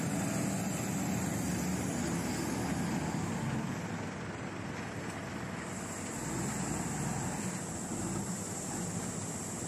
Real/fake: real